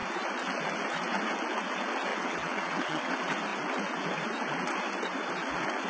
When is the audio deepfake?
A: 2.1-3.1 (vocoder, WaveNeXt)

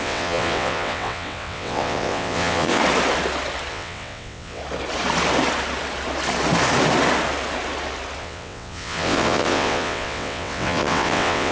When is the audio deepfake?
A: 0.0-2.8 (vocoder, WaveNeXt); 3.7-4.6; 8.2-11.5